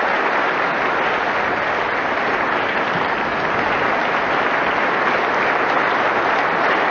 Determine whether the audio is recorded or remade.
recorded